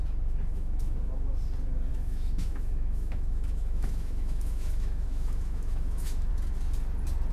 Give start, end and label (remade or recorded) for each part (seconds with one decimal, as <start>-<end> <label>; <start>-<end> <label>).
0.0-0.5 recorded; 0.5-1.0 remade; 1.0-1.9 recorded; 1.9-6.3 remade; 6.3-7.3 recorded